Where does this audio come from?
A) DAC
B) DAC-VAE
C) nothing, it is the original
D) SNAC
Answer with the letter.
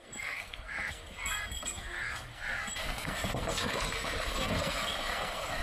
D